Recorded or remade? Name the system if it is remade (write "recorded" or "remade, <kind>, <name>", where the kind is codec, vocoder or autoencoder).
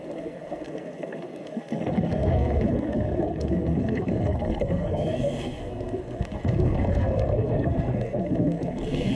remade, codec, SNAC